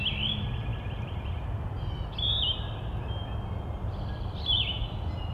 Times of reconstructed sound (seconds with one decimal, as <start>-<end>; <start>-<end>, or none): none

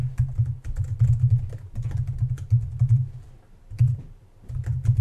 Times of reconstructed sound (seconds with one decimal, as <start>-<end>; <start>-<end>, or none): none